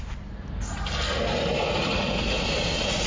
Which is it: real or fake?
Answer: real